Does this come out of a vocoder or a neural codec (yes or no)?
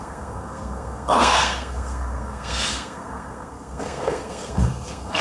yes